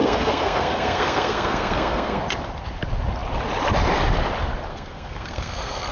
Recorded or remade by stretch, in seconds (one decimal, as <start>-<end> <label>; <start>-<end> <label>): 0.0-2.2 remade; 2.2-4.7 recorded; 4.7-5.9 remade